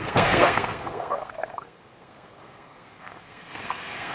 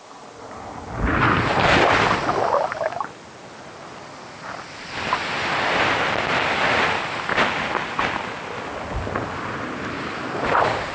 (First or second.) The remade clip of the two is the first